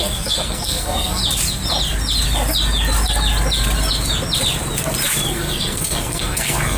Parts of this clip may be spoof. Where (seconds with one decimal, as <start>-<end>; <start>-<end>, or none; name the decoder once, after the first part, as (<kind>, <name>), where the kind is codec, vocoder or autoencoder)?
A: 0.0-1.2 (codec, SNAC); 5.3-6.8